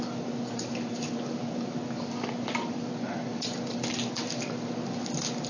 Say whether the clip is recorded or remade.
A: recorded